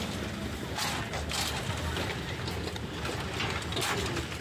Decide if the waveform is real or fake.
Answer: real